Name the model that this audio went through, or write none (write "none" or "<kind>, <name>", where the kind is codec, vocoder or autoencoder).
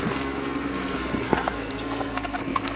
codec, SNAC